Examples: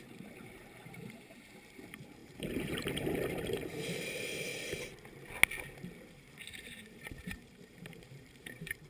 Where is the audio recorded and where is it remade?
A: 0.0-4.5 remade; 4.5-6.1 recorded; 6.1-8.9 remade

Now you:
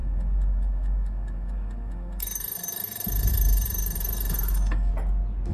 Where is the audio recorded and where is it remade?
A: 0.0-4.9 remade; 4.9-5.5 recorded

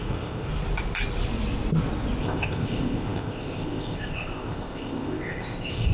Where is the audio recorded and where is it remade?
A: 0.0-0.5 remade; 0.5-2.2 recorded; 2.2-5.9 remade

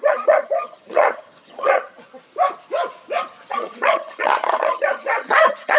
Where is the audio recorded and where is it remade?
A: 0.0-2.0 remade; 2.0-3.5 recorded; 3.5-5.8 remade

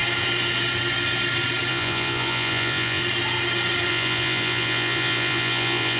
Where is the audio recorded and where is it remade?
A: 0.0-1.7 recorded; 1.7-3.0 remade; 3.0-3.9 recorded; 3.9-6.0 remade

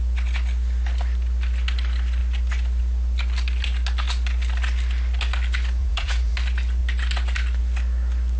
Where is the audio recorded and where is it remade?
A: 0.0-5.8 recorded; 5.8-6.3 remade; 6.3-8.4 recorded

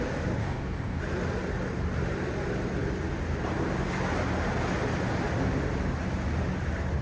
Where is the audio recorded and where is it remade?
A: 0.0-0.4 recorded; 0.4-1.0 remade; 1.0-7.0 recorded

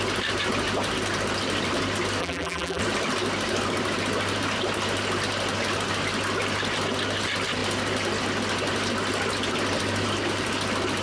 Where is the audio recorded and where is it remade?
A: 0.0-2.2 recorded; 2.2-2.8 remade; 2.8-11.0 recorded